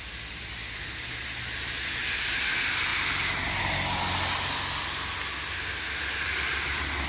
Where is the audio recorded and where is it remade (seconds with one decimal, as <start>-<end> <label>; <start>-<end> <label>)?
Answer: 0.0-7.1 recorded